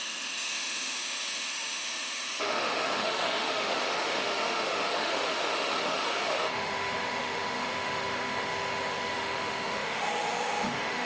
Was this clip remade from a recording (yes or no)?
yes